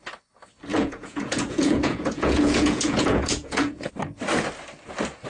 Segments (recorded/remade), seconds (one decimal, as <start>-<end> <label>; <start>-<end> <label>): 0.0-0.7 recorded; 0.7-3.9 remade; 3.9-5.3 recorded